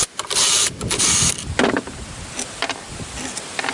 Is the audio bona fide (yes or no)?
yes